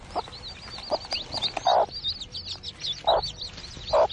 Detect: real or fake real